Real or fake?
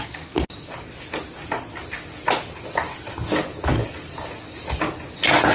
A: real